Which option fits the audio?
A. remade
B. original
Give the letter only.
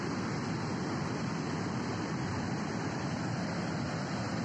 A